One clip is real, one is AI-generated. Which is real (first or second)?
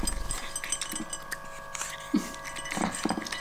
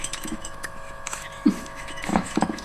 first